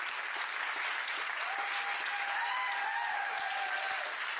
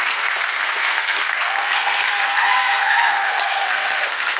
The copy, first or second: second